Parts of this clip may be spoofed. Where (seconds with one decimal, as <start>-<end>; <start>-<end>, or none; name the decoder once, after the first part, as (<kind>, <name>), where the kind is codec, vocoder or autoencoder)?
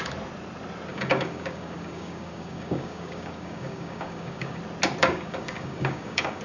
0.9-4.6 (codec, DAC); 5.0-6.4